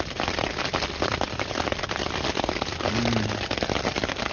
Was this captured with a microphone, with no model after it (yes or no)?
yes